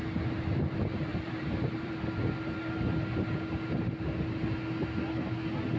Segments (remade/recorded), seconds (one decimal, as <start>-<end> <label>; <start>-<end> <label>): 0.0-1.1 recorded; 1.1-1.9 remade; 1.9-5.8 recorded

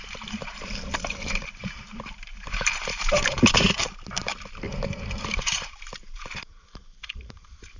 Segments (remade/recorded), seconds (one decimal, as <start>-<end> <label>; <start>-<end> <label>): 0.0-3.8 remade; 3.8-5.2 recorded; 5.2-7.8 remade